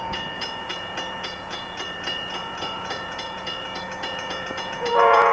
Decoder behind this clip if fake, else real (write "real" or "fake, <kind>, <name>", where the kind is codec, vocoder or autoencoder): fake, vocoder, Vocos